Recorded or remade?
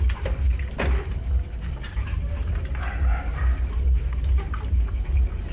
recorded